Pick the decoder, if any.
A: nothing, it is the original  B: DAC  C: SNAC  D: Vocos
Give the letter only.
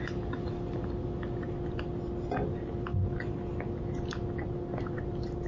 A